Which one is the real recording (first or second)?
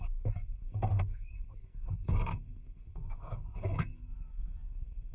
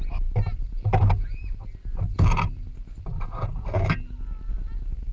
second